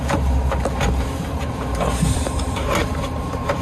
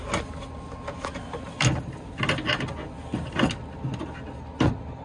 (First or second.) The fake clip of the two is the first